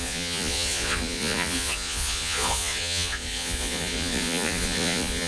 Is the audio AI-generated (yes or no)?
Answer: yes